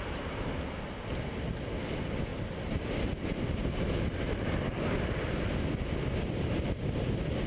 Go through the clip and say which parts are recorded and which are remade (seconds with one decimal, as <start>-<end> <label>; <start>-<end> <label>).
0.0-7.5 recorded